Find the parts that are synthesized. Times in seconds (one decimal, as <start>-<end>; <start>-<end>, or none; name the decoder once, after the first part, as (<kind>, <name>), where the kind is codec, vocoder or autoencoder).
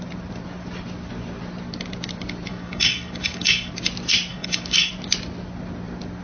2.5-3.7 (codec, DAC); 4.3-4.9